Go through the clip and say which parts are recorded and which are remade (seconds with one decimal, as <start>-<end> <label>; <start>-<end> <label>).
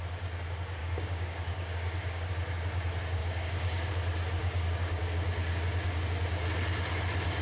0.0-0.8 recorded; 0.8-2.3 remade; 2.3-3.2 recorded; 3.2-3.9 remade; 3.9-4.4 recorded; 4.4-5.0 remade; 5.0-7.4 recorded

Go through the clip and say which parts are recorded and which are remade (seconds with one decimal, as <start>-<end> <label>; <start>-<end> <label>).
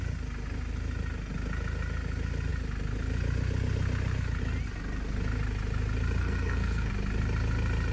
0.0-6.2 recorded; 6.2-6.9 remade; 6.9-7.9 recorded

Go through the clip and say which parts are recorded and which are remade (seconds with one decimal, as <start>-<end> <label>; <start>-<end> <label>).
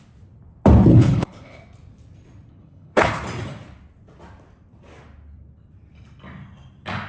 0.0-0.9 recorded; 0.9-1.6 remade; 1.6-2.5 recorded; 2.5-3.2 remade; 3.2-7.1 recorded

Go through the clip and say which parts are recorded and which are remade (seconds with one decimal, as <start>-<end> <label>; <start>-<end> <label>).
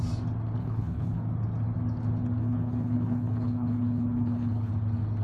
0.0-0.6 recorded; 0.6-1.2 remade; 1.2-2.4 recorded; 2.4-4.7 remade; 4.7-5.2 recorded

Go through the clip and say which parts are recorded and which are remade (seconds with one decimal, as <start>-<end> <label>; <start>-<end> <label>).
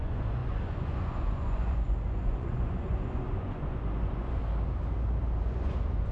0.0-4.4 remade; 4.4-5.4 recorded; 5.4-6.1 remade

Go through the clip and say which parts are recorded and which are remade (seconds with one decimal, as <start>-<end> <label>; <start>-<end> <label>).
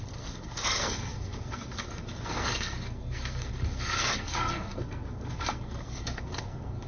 0.0-6.9 remade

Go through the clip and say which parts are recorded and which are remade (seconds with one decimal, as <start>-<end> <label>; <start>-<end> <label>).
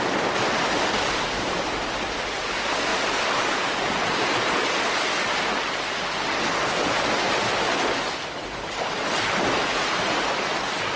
0.0-11.0 recorded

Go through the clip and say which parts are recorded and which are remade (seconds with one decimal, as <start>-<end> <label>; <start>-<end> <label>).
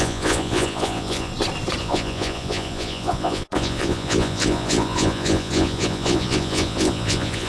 0.0-1.3 remade; 1.3-1.8 recorded; 1.8-7.5 remade